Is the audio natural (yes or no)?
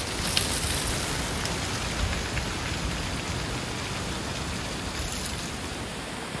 yes